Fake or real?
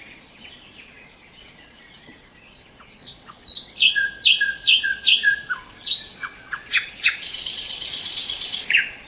fake